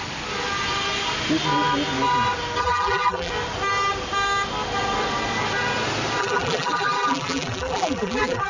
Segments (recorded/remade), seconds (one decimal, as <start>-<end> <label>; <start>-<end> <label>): 0.0-2.6 recorded; 2.6-3.3 remade; 3.3-6.2 recorded; 6.2-8.5 remade